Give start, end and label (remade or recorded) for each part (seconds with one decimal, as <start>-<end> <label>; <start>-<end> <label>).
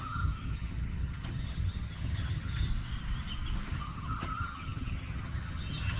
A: 0.0-2.7 remade; 2.7-3.7 recorded; 3.7-6.0 remade